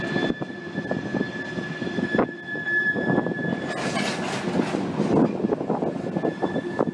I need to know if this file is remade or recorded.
recorded